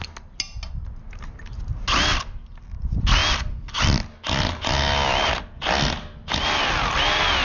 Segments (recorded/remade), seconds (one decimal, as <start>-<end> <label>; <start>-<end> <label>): 0.0-7.4 recorded